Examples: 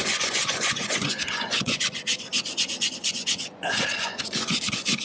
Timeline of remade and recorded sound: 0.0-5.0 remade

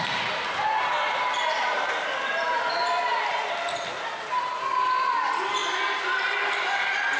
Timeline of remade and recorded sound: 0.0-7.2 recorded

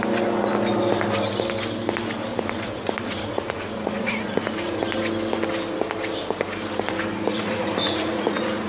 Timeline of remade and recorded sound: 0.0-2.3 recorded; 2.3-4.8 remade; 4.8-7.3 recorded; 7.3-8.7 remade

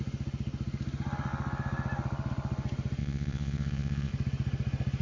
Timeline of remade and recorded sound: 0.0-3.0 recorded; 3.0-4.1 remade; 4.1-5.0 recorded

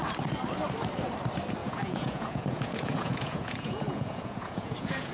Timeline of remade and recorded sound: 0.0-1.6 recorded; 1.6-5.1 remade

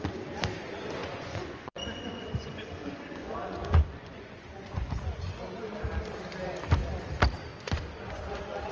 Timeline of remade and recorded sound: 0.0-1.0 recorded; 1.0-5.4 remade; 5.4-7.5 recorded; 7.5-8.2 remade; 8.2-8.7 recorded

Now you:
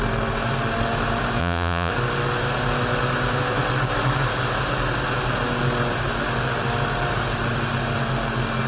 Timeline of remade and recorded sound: 0.0-1.4 recorded; 1.4-1.9 remade; 1.9-8.7 recorded

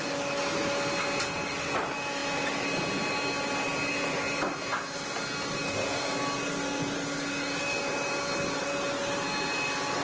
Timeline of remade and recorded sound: 0.0-10.0 recorded